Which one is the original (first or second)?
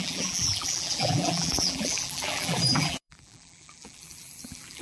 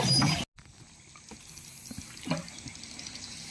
second